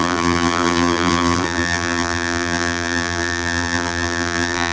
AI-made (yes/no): yes